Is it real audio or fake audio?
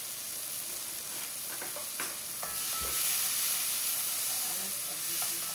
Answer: real